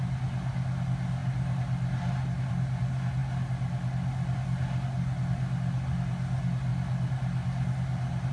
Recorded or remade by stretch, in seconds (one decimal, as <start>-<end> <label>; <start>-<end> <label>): 0.0-8.3 recorded